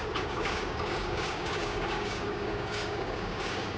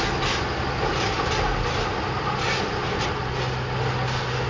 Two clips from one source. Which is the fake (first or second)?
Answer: first